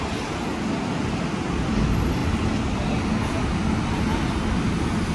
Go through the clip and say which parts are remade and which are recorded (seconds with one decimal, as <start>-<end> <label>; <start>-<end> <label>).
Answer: 0.0-5.1 recorded